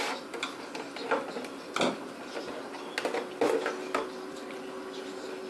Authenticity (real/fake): real